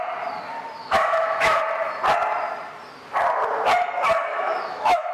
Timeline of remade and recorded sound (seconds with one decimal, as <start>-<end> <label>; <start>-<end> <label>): 0.0-0.8 recorded; 0.8-1.6 remade; 1.6-4.3 recorded; 4.3-5.1 remade